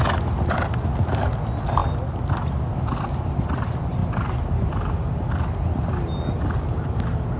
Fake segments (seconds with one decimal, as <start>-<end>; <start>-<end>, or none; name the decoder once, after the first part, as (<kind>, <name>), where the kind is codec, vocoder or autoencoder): none